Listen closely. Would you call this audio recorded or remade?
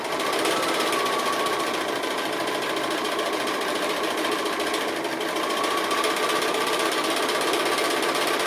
recorded